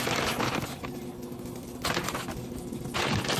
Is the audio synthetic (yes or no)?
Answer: no